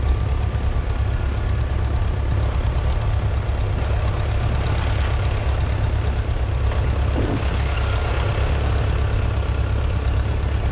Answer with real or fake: real